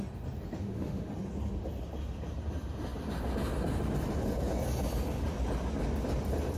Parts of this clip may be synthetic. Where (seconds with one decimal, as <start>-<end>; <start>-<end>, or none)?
0.6-1.1